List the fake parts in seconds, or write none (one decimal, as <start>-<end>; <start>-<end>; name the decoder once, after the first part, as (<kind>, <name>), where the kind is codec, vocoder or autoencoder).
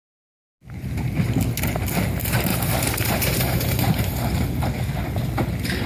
2.5-4.1 (vocoder, BigVGAN v2)